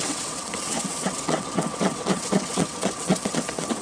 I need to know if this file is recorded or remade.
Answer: remade